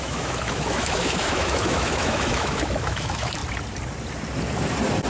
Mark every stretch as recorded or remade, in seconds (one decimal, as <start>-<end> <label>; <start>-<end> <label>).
0.0-3.4 remade; 3.4-5.1 recorded

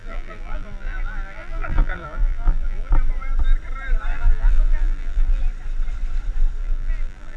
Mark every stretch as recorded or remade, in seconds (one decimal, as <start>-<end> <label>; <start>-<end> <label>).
0.0-2.9 remade; 2.9-4.1 recorded; 4.1-5.4 remade; 5.4-6.6 recorded; 6.6-7.4 remade

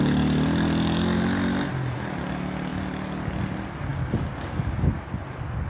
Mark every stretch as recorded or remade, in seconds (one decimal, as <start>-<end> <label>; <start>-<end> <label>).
0.0-5.7 recorded

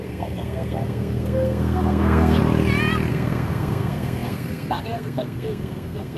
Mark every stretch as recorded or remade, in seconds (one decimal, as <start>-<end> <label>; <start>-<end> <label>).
0.0-2.4 remade; 2.4-3.1 recorded; 3.1-6.2 remade

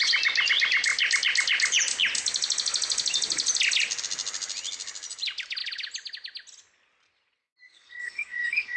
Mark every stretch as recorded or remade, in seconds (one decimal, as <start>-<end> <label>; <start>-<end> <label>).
0.0-7.4 recorded; 7.4-8.8 remade

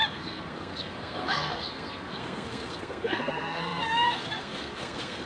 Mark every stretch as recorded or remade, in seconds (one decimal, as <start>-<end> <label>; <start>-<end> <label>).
0.0-5.3 remade

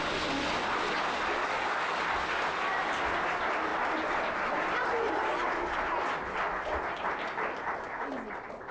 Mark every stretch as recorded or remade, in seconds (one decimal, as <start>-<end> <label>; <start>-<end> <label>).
0.0-1.4 recorded; 1.4-2.0 remade; 2.0-8.7 recorded